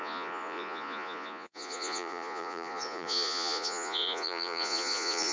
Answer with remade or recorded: remade